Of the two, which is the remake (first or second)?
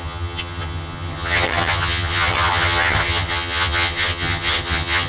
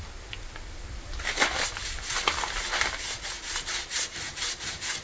first